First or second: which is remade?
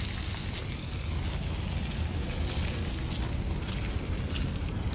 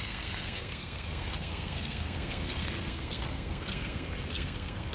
second